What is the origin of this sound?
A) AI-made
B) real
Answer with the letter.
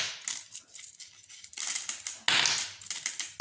B